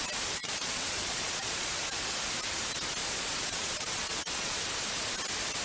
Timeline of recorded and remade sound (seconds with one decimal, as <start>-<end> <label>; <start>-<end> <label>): 0.0-0.4 recorded; 0.4-1.7 remade; 1.7-3.0 recorded; 3.0-4.6 remade; 4.6-5.6 recorded